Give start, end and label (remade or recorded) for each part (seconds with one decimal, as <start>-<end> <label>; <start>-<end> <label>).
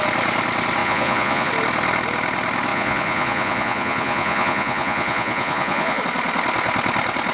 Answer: 0.0-0.8 recorded; 0.8-1.5 remade; 1.5-2.7 recorded; 2.7-6.0 remade; 6.0-7.3 recorded